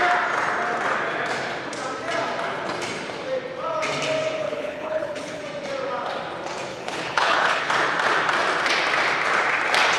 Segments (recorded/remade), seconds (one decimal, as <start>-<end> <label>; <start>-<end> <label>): 0.0-4.4 recorded; 4.4-5.4 remade; 5.4-6.7 recorded; 6.7-7.7 remade; 7.7-10.0 recorded